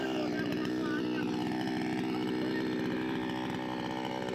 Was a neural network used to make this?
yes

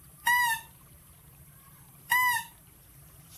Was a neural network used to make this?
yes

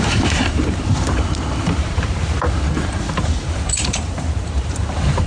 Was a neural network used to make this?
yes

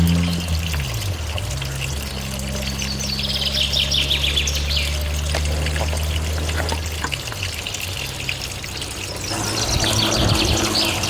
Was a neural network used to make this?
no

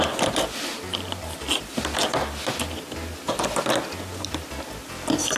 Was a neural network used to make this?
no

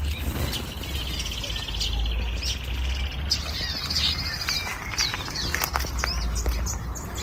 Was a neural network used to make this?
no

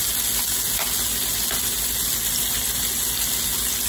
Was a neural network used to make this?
no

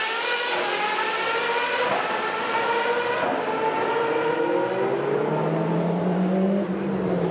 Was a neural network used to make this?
no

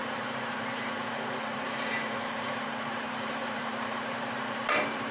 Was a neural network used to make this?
yes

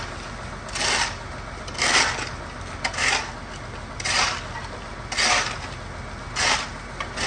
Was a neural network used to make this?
no